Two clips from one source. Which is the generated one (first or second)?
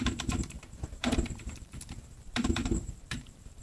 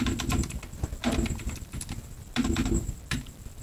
first